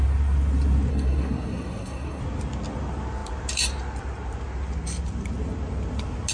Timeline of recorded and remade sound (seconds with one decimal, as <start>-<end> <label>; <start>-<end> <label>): 0.0-0.9 recorded; 0.9-2.2 remade; 2.2-6.3 recorded